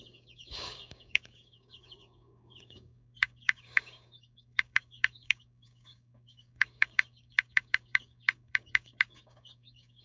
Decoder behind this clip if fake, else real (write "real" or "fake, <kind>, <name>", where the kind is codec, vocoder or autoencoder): fake, codec, DAC